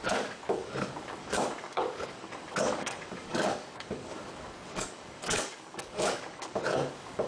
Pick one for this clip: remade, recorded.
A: remade